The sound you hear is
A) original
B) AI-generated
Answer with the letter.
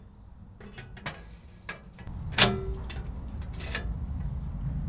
A